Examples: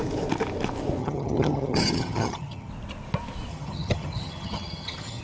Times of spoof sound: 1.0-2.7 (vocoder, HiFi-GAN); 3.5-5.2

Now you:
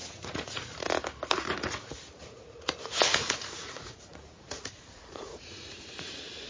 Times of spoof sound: 0.0-0.7 (vocoder, Vocos); 2.2-6.1

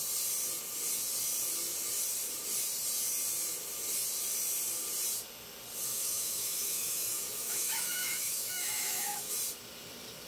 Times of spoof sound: 5.9-9.3 (autoencoder, DAC-VAE)

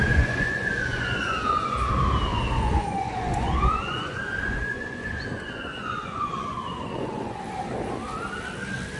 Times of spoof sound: 0.0-1.9 (vocoder, Vocos); 2.3-7.4

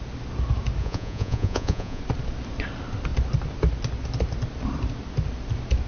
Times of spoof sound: 0.8-2.0 (vocoder, Vocos)